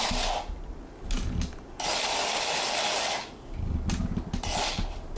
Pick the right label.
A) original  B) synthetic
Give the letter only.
A